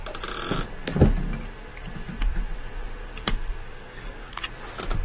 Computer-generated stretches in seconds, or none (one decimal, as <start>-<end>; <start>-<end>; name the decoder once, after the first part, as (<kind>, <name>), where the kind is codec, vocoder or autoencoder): 3.6-4.3 (codec, DAC)